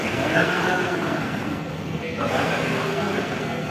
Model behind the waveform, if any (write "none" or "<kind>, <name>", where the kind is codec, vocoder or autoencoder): codec, SNAC